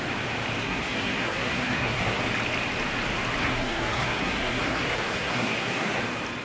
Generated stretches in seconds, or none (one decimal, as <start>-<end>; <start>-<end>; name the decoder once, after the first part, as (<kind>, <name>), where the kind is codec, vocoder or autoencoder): 0.6-2.2 (codec, SNAC); 3.4-6.0